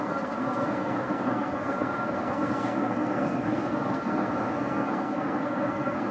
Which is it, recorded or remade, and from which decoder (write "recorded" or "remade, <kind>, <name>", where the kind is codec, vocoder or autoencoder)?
remade, codec, SNAC